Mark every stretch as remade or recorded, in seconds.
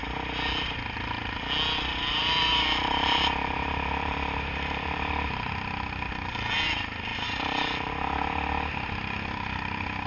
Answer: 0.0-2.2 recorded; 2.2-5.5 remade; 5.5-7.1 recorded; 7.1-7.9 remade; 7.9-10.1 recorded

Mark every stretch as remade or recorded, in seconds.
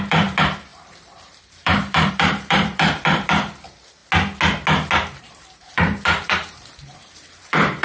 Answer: 0.0-4.0 remade; 4.0-5.2 recorded; 5.2-7.8 remade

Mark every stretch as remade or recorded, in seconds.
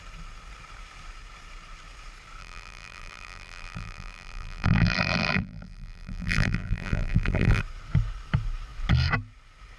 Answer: 0.0-2.4 recorded; 2.4-7.6 remade; 7.6-9.8 recorded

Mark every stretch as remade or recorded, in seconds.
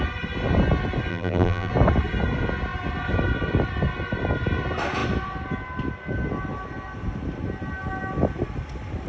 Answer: 0.0-1.1 recorded; 1.1-1.7 remade; 1.7-9.1 recorded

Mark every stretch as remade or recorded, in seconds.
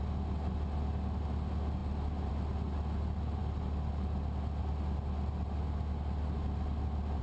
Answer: 0.0-7.2 recorded